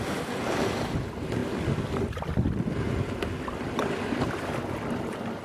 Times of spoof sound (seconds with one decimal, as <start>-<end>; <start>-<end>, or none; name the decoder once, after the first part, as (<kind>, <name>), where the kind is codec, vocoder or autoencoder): none